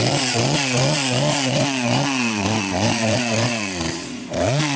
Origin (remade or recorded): remade